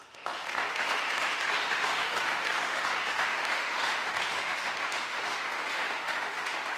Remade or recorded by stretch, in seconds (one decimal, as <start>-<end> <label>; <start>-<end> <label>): 0.0-6.8 remade